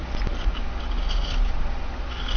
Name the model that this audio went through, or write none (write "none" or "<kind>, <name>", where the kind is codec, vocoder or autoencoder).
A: none